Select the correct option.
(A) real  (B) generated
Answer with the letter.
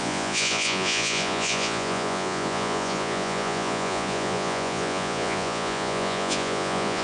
B